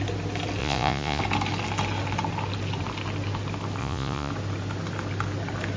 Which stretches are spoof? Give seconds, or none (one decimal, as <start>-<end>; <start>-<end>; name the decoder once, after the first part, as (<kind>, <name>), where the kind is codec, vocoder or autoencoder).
0.6-1.2 (vocoder, Vocos); 3.8-4.3